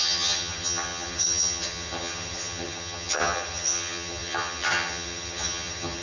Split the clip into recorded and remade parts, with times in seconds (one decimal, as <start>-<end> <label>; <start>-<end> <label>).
0.0-6.0 remade